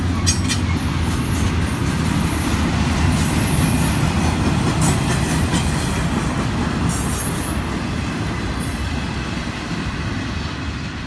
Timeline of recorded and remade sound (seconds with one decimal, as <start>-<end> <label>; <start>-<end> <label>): 0.0-11.1 recorded